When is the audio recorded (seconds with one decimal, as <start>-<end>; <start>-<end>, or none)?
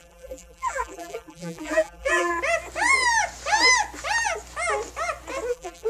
2.3-5.5